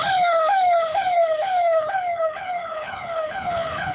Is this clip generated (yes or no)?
yes